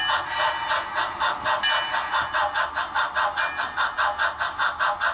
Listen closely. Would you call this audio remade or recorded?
recorded